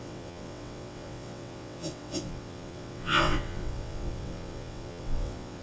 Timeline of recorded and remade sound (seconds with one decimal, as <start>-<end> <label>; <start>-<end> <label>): 0.0-5.6 remade